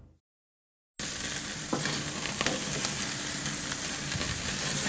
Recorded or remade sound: recorded